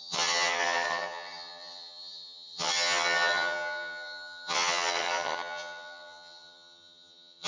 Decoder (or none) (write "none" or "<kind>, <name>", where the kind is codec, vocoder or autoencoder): vocoder, HiFi-GAN